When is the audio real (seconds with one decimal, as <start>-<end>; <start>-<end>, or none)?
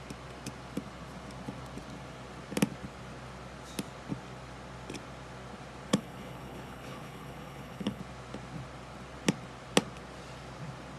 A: 0.0-5.9; 8.0-11.0